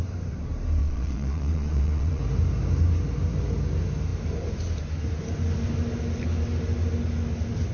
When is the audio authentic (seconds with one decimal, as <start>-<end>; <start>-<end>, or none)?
0.0-0.8; 2.2-7.7